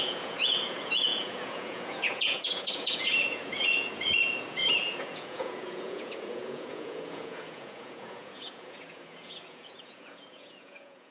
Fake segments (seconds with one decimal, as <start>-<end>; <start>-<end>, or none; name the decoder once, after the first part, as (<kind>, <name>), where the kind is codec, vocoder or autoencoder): 0.0-11.1 (vocoder, Vocos)